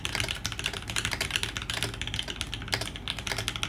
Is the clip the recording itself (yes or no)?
yes